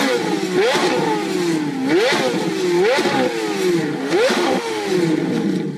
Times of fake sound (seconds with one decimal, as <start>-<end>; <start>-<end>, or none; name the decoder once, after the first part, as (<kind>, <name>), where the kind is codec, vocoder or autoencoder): 4.0-4.9 (autoencoder, DAC-VAE)